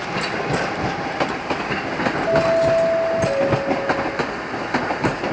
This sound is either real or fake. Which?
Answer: real